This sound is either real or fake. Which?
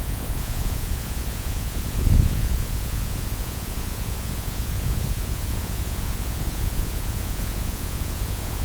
fake